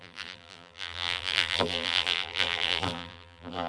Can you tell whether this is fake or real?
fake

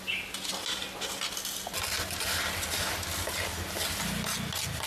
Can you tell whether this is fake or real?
real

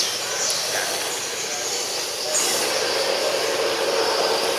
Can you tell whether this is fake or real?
real